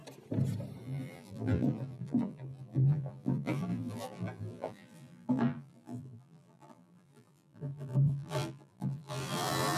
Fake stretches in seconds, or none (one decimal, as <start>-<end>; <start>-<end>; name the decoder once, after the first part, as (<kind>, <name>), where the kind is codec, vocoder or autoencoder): 0.8-9.8 (vocoder, BigVGAN v2)